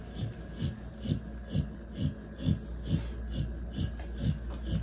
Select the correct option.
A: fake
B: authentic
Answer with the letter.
B